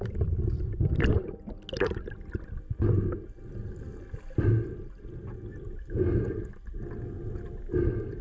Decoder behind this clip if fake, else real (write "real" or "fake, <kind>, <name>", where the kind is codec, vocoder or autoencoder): real